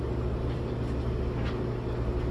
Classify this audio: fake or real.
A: real